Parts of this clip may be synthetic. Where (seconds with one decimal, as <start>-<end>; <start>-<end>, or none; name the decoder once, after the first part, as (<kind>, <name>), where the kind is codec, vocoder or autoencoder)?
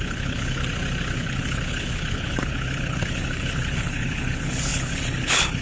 0.0-0.6 (codec, HILCodec); 1.1-5.6